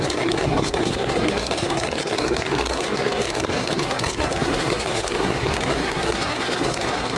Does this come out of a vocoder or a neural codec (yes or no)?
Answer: yes